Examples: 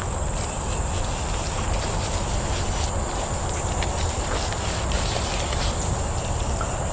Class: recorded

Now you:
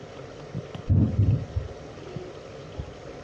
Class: recorded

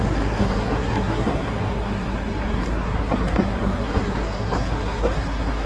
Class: remade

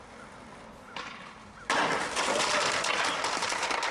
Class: recorded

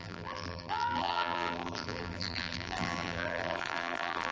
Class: remade